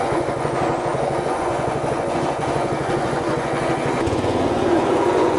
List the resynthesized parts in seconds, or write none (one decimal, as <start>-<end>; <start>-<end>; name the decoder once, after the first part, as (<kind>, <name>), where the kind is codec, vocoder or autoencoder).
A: 0.0-5.4 (vocoder, Vocos)